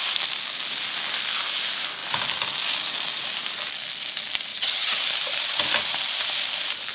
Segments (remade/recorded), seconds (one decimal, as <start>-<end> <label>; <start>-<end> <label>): 0.0-4.5 recorded; 4.5-5.0 remade; 5.0-6.9 recorded